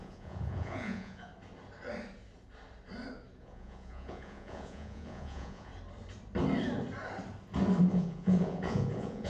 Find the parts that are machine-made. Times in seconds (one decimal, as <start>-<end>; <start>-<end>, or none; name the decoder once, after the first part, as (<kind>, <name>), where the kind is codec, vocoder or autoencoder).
0.0-1.3 (vocoder, Vocos); 3.4-5.7; 7.9-9.3